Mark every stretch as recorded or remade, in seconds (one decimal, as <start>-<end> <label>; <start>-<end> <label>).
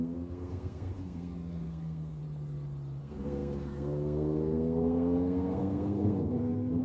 0.0-2.2 remade; 2.2-3.0 recorded; 3.0-6.8 remade